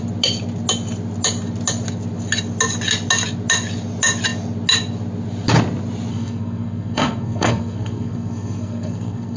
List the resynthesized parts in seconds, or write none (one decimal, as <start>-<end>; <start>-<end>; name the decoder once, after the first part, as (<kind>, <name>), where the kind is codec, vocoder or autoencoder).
6.1-9.4 (codec, SNAC)